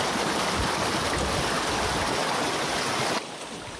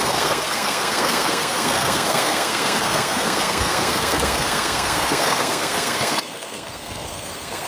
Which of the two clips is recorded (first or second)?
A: first